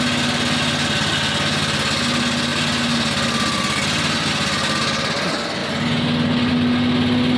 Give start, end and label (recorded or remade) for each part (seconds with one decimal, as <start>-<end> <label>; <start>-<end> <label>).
0.0-7.4 recorded